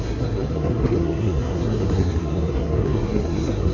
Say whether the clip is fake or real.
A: fake